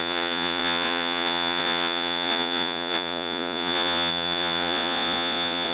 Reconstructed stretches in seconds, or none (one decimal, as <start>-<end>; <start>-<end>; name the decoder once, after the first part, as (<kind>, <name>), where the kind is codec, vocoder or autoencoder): 0.0-5.7 (vocoder, Vocos)

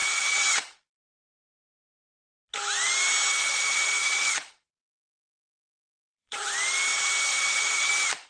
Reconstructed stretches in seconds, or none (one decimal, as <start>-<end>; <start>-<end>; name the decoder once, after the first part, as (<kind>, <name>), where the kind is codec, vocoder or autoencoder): 0.0-0.9 (vocoder, Vocos); 3.4-6.5; 7.3-7.9

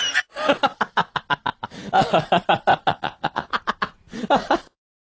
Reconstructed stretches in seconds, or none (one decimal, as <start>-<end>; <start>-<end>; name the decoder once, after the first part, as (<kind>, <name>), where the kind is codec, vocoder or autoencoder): 2.9-3.5 (vocoder, Vocos)

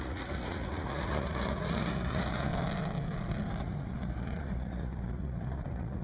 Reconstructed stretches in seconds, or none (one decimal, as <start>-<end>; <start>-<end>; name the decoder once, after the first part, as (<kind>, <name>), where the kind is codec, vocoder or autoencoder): 0.0-2.5 (vocoder, Vocos); 3.6-6.0

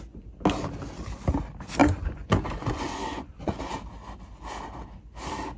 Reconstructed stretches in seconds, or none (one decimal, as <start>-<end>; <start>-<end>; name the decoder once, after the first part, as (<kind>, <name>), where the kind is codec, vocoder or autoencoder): 1.8-3.6 (vocoder, Vocos)

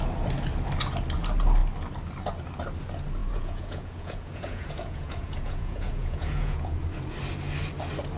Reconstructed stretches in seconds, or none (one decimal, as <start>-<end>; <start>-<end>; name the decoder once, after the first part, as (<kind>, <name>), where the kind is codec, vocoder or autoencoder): 3.2-6.8 (vocoder, Vocos)

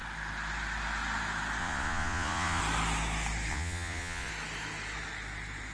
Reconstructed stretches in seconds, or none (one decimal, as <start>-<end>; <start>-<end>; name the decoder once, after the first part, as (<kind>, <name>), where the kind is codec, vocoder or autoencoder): 1.6-2.6 (vocoder, Vocos); 3.5-4.3

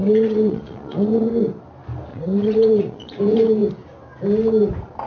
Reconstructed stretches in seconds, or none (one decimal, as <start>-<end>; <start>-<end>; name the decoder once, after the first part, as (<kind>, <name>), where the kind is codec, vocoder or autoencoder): 0.0-1.3 (vocoder, Vocos); 2.1-3.2